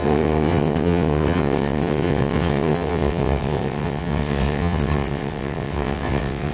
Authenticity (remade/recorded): remade